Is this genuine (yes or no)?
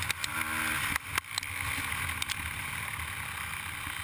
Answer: yes